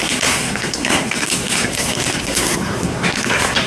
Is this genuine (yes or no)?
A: no